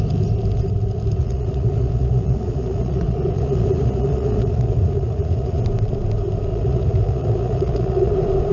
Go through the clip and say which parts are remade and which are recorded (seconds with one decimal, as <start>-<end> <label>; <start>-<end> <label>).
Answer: 0.0-1.2 recorded; 1.2-5.6 remade; 5.6-6.5 recorded; 6.5-8.1 remade; 8.1-8.5 recorded